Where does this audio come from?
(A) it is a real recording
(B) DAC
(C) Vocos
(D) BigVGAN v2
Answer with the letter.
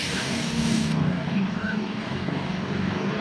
B